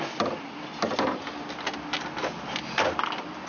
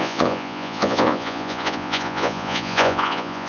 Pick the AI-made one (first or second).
second